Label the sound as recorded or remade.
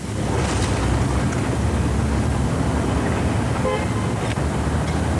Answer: recorded